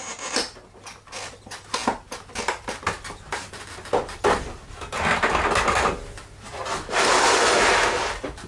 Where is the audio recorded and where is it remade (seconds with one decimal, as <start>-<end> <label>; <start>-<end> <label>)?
0.0-8.5 recorded